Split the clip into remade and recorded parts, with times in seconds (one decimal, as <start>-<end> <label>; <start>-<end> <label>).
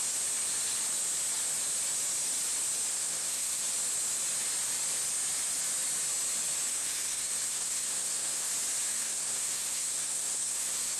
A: 0.0-2.9 recorded; 2.9-3.6 remade; 3.6-6.7 recorded; 6.7-8.5 remade; 8.5-8.9 recorded; 8.9-11.0 remade